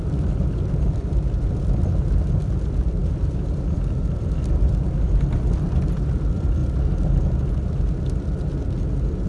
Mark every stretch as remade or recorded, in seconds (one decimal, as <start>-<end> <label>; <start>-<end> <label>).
0.0-6.6 remade; 6.6-7.5 recorded; 7.5-9.3 remade